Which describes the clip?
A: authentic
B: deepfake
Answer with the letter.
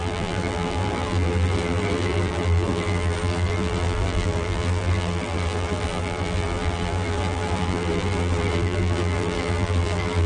B